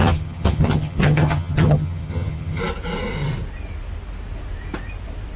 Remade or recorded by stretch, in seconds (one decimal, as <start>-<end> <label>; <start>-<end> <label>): 0.0-2.6 remade; 2.6-5.4 recorded